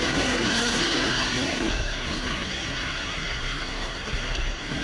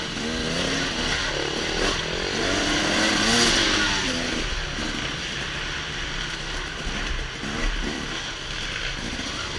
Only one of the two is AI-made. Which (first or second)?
first